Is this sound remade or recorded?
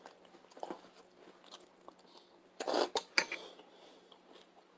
recorded